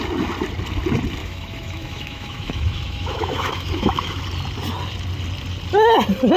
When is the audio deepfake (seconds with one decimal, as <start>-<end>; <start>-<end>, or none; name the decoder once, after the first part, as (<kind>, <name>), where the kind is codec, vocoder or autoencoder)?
1.2-4.2 (autoencoder, DAC-VAE)